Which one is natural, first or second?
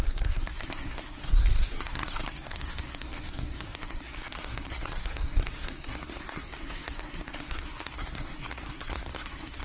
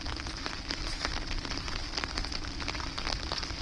second